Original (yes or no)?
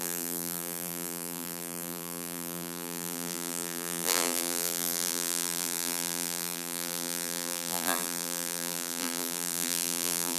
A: no